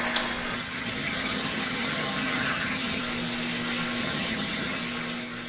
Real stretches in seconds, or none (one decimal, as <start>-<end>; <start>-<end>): 0.0-0.5; 3.0-4.0; 4.8-5.5

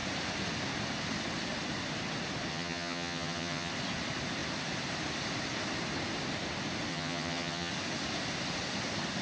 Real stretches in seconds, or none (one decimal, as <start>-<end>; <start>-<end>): 0.0-2.5; 3.7-6.9; 7.7-9.2

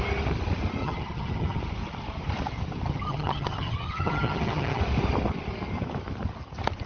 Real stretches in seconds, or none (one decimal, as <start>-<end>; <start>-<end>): 0.0-0.8; 1.6-2.9; 4.8-6.9

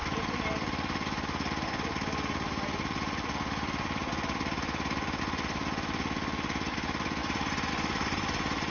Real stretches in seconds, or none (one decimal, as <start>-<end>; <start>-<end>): 0.0-8.7

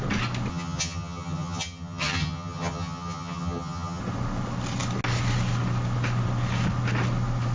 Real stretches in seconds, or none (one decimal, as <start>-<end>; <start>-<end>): 0.0-0.5; 4.0-7.5